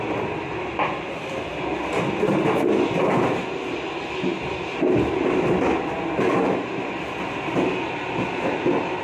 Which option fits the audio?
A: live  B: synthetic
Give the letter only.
A